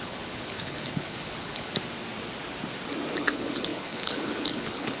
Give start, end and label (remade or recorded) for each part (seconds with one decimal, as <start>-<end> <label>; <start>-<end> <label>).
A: 0.0-1.7 remade; 1.7-3.1 recorded; 3.1-5.0 remade